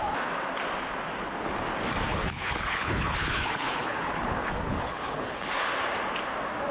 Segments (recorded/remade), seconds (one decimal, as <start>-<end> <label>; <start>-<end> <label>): 0.0-2.1 recorded; 2.1-5.4 remade; 5.4-6.7 recorded